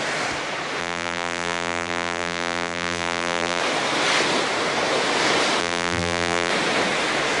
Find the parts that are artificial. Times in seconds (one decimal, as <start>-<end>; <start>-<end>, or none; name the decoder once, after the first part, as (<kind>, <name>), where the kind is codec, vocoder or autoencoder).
0.8-3.6 (vocoder, BigVGAN v2); 5.6-6.5